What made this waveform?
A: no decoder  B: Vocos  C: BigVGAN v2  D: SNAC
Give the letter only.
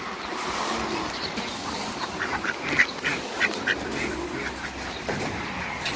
C